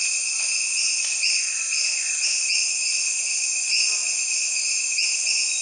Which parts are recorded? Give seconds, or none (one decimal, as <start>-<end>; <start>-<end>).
0.0-5.6